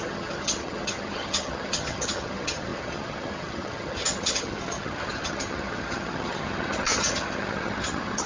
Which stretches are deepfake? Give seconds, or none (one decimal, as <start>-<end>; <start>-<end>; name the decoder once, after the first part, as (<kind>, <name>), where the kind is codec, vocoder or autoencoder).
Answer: 0.0-8.3 (vocoder, HiFi-GAN)